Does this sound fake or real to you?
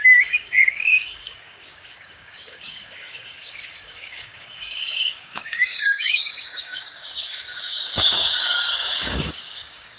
fake